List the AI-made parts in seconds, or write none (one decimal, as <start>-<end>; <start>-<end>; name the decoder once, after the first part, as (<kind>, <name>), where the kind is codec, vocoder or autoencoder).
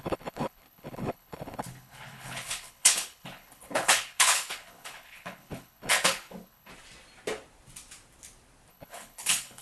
0.0-6.7 (codec, HILCodec); 8.7-9.6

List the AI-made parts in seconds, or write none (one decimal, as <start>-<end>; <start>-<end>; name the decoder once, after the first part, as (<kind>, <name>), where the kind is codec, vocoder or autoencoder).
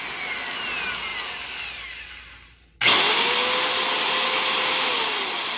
none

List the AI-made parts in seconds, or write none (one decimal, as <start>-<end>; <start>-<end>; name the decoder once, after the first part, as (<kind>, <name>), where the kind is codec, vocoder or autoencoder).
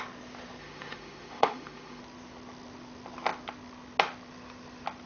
0.6-2.0 (autoencoder, DAC-VAE)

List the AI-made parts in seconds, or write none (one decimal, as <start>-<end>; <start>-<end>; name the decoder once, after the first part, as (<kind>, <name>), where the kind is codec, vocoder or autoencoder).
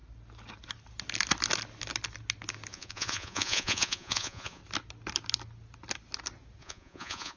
2.7-4.6 (vocoder, Vocos); 6.6-7.4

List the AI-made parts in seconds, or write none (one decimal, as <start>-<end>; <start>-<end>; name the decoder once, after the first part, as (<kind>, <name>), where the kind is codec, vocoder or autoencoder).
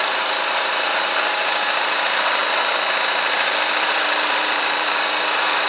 0.0-2.4 (vocoder, BigVGAN v2); 3.8-5.7